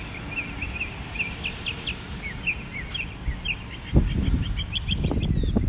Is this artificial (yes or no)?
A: no